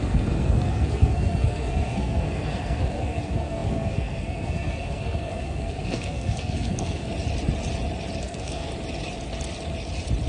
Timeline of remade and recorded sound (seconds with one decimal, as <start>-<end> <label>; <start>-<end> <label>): 0.0-7.1 remade; 7.1-8.2 recorded; 8.2-8.7 remade; 8.7-10.3 recorded